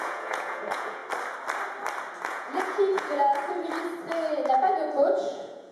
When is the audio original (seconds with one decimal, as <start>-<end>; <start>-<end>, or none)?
1.0-2.3; 3.4-4.6